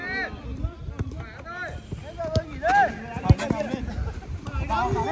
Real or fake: real